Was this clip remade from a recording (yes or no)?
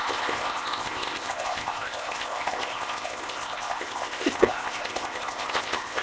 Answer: yes